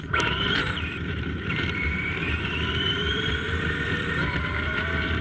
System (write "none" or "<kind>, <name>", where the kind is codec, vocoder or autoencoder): vocoder, BigVGAN v2